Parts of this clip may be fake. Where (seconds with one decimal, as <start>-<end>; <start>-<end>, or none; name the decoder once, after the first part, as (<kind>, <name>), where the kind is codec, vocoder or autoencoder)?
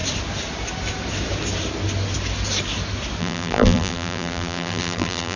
3.2-5.4 (vocoder, BigVGAN v2)